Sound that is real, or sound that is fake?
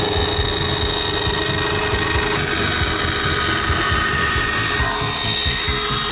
real